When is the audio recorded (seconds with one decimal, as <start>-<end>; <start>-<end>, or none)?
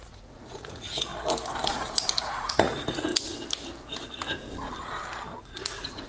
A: 1.1-2.2; 3.1-5.4